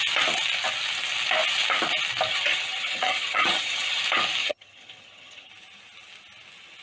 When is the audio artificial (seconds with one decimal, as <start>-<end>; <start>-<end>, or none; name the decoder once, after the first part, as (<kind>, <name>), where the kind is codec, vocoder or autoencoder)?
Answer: 2.3-4.0 (vocoder, HiFi-GAN); 4.4-5.5